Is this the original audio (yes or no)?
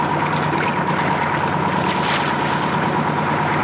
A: yes